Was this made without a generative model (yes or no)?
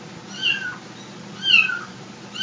yes